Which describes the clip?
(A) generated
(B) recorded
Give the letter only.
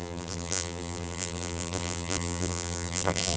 A